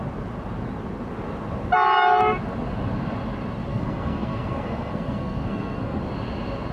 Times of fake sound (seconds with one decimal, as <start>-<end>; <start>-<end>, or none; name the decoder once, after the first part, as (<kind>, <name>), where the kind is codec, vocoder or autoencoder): 3.7-6.0 (codec, SNAC)